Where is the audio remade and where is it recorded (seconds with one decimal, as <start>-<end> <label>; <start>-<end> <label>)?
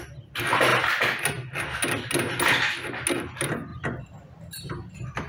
0.0-5.3 recorded